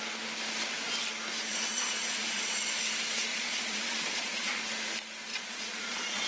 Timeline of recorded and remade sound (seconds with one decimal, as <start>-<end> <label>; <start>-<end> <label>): 0.0-1.5 recorded; 1.5-2.6 remade; 2.6-3.3 recorded; 3.3-4.6 remade; 4.6-5.3 recorded; 5.3-6.3 remade